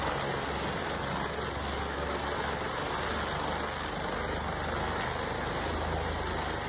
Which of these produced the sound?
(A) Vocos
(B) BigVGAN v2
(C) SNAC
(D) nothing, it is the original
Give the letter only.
D